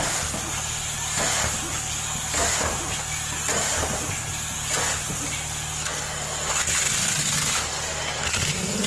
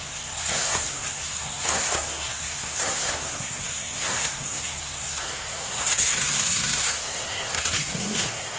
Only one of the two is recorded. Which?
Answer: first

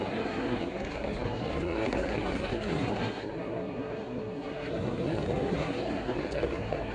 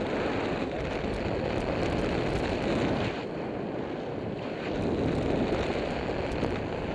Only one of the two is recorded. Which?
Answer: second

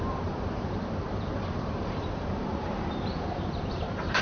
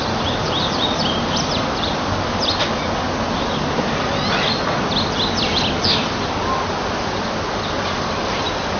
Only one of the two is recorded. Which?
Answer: second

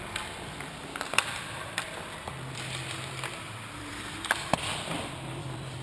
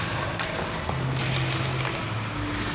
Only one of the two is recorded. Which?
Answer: second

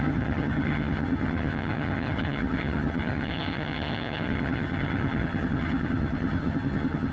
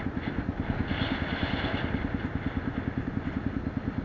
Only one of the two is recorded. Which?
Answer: second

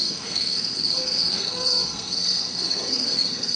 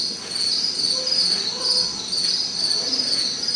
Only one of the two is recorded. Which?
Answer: second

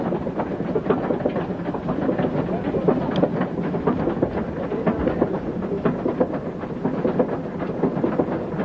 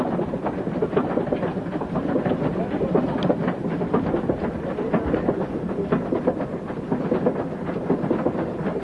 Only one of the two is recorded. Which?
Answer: first